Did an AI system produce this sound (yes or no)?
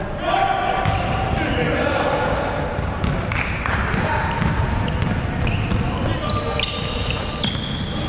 no